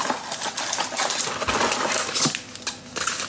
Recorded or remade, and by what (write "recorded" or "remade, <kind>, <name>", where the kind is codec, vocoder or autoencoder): recorded